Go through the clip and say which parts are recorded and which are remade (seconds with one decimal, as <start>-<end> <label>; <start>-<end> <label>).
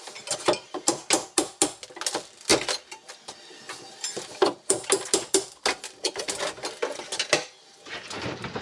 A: 0.0-8.6 recorded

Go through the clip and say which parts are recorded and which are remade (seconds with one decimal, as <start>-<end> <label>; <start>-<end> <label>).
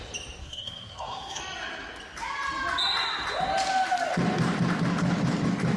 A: 0.0-0.4 recorded; 0.4-1.4 remade; 1.4-5.8 recorded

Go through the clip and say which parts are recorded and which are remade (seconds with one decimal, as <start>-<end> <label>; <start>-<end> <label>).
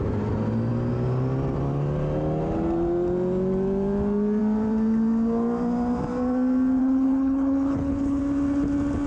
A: 0.0-6.8 recorded; 6.8-8.2 remade; 8.2-9.1 recorded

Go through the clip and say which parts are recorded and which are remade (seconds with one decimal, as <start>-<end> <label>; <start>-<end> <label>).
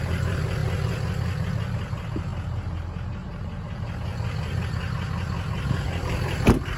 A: 0.0-0.6 remade; 0.6-1.5 recorded; 1.5-2.3 remade; 2.3-6.0 recorded; 6.0-6.8 remade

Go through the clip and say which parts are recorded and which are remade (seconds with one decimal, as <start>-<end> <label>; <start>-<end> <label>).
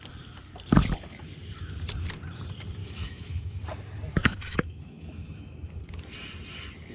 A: 0.0-2.8 recorded; 2.8-3.6 remade; 3.6-4.1 recorded; 4.1-5.8 remade; 5.8-6.9 recorded